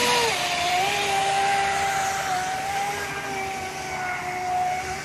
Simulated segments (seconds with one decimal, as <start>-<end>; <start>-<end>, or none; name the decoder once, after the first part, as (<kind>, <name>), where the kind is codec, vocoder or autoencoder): none